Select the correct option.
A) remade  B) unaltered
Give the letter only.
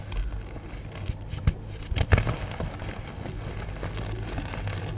B